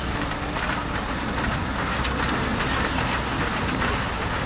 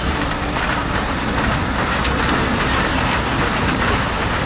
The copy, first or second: second